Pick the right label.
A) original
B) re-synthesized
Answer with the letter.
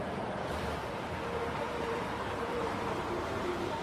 B